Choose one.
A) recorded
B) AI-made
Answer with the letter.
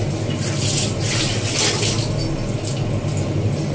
A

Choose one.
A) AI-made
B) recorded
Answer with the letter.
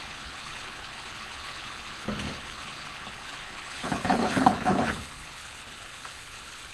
A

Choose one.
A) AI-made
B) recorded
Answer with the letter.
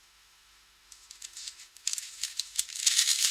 A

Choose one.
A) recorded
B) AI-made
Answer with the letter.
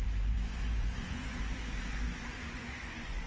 B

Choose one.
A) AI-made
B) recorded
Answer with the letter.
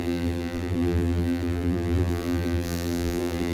A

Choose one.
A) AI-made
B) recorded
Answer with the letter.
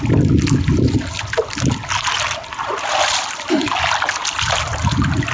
B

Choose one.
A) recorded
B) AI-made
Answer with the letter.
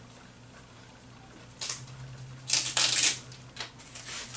A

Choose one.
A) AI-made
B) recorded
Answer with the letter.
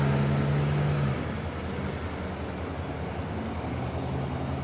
B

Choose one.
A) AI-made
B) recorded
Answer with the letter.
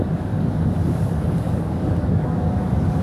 A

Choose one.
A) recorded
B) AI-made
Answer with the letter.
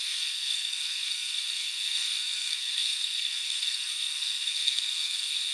B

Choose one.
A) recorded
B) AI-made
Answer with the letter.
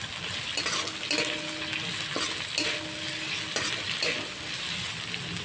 A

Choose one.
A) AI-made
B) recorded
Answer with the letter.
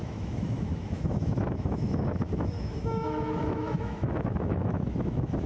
A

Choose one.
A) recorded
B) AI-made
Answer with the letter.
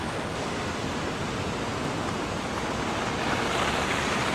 A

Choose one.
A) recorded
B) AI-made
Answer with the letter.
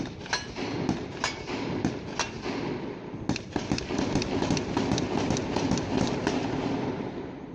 A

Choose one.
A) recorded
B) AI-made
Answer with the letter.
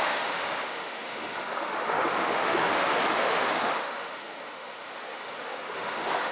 B